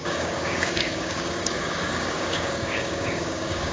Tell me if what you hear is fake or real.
fake